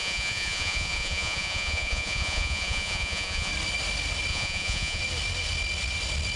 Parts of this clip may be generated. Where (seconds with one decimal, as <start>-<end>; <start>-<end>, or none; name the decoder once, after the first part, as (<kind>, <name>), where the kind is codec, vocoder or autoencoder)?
0.0-3.5 (vocoder, Vocos); 4.3-5.0